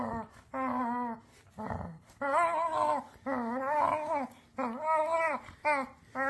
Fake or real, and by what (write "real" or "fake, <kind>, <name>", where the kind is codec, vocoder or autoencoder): real